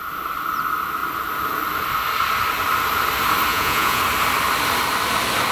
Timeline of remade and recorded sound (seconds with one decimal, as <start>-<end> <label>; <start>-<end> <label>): 0.0-3.5 recorded; 3.5-4.0 remade; 4.0-5.5 recorded